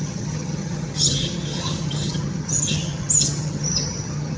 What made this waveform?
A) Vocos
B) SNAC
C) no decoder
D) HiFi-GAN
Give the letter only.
D